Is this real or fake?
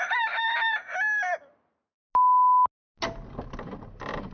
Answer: real